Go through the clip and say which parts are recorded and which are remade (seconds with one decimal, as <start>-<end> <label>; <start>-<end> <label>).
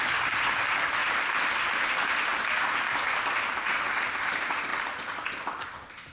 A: 0.0-1.0 recorded; 1.0-1.9 remade; 1.9-4.7 recorded; 4.7-5.4 remade; 5.4-6.1 recorded